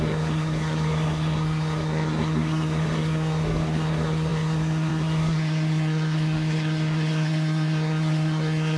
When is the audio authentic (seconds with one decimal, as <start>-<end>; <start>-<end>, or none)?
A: none